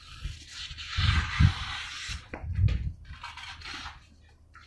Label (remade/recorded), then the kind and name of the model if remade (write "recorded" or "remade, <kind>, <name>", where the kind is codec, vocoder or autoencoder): recorded